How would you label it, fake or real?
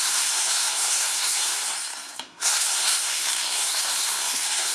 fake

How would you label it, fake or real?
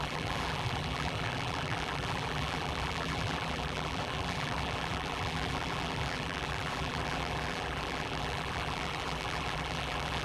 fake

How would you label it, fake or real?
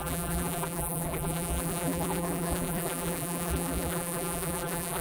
fake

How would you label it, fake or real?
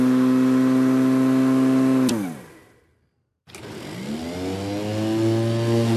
real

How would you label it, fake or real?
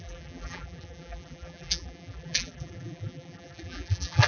fake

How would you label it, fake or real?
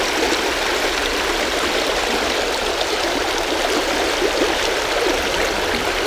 real